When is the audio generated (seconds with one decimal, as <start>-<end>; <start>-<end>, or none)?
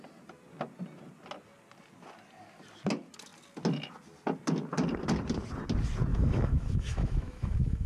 6.1-7.9